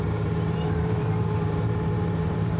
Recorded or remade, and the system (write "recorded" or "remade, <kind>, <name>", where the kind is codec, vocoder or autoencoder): remade, vocoder, BigVGAN v2